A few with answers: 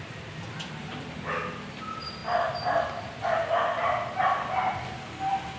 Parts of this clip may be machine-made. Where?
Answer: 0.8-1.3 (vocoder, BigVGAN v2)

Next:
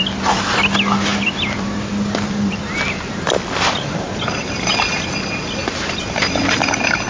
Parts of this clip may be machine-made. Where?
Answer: 1.1-4.7 (vocoder, BigVGAN v2); 5.6-6.2

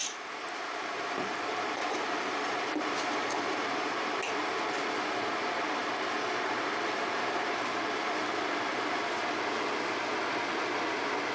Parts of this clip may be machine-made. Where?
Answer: 0.0-4.0 (vocoder, BigVGAN v2)

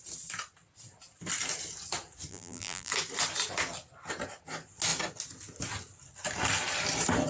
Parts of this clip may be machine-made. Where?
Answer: 2.3-2.9 (vocoder, BigVGAN v2)

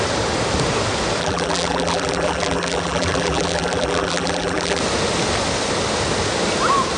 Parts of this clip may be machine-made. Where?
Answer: 1.2-4.8 (vocoder, BigVGAN v2)